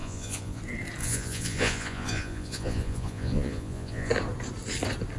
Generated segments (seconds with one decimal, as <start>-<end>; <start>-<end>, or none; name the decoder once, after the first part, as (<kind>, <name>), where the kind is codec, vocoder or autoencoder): 0.0-0.6 (vocoder, Vocos); 1.0-4.1